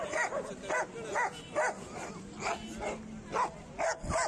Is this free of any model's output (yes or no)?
yes